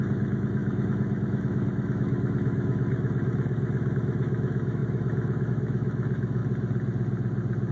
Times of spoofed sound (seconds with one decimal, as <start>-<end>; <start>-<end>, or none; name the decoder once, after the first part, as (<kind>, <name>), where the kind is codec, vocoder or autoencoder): 0.0-6.4 (autoencoder, DAC-VAE)